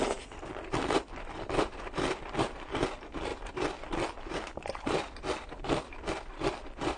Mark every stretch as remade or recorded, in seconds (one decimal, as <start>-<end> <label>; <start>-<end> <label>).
0.0-7.0 remade